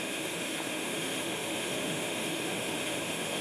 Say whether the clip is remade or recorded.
remade